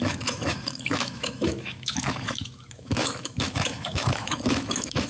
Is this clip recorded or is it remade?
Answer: remade